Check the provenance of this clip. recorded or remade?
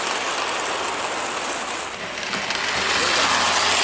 recorded